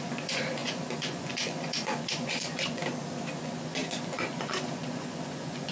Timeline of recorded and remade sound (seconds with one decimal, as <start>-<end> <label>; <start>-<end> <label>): 0.0-2.8 remade; 2.8-3.4 recorded; 3.4-5.7 remade